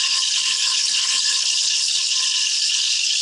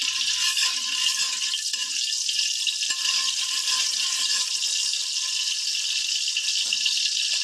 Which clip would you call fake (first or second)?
first